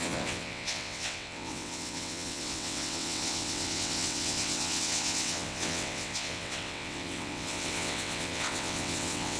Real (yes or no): no